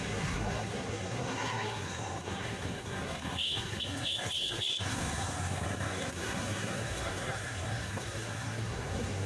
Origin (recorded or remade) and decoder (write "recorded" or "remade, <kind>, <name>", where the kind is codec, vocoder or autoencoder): remade, codec, SNAC